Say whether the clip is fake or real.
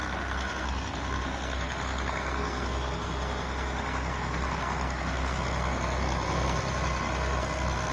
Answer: fake